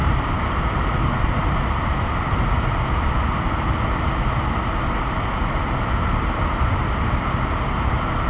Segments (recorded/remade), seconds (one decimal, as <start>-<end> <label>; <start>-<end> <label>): 0.0-8.3 recorded